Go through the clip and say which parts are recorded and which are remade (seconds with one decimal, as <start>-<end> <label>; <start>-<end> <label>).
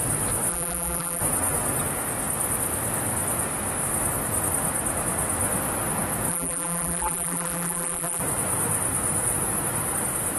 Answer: 0.0-0.5 recorded; 0.5-1.2 remade; 1.2-6.3 recorded; 6.3-8.2 remade; 8.2-10.4 recorded